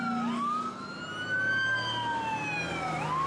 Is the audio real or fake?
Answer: real